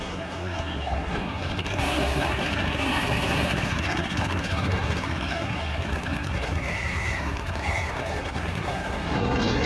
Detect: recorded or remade remade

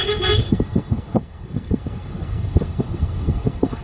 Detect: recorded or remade remade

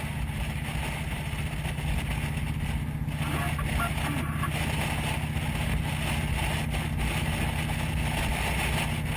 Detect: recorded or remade recorded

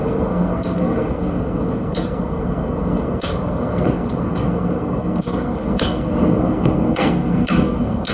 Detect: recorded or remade remade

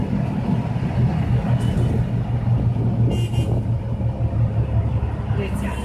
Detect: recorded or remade recorded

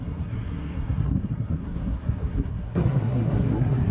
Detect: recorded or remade remade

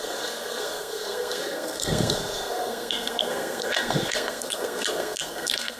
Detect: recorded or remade remade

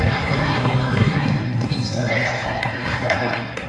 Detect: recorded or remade remade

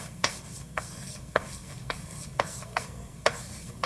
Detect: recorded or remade remade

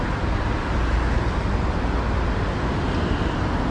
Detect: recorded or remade recorded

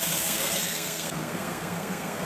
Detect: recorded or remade remade